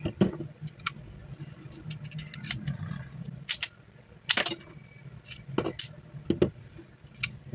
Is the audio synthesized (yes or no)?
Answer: no